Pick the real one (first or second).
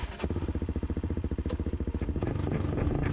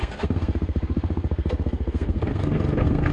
first